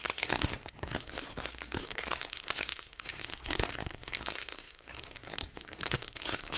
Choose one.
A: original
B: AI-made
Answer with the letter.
B